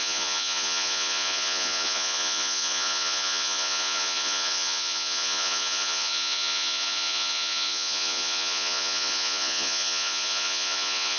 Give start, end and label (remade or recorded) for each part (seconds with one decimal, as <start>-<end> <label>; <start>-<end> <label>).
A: 0.0-11.2 remade